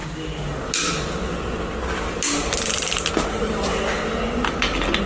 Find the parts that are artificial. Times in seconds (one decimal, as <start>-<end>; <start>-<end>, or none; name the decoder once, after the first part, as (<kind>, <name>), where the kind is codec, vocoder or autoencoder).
none